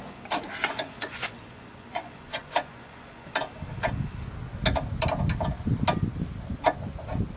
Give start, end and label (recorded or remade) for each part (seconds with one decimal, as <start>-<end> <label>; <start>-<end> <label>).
0.0-0.6 recorded; 0.6-3.3 remade; 3.3-7.4 recorded

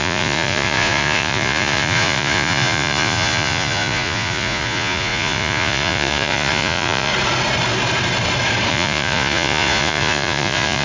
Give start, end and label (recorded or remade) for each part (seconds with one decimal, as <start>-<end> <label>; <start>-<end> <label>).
0.0-7.1 remade; 7.1-8.7 recorded; 8.7-10.8 remade

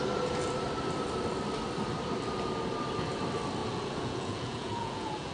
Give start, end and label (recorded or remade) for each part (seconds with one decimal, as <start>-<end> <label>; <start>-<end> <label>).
0.0-3.6 recorded; 3.6-5.3 remade